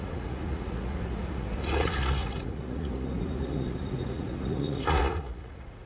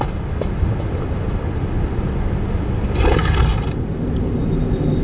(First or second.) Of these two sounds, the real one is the second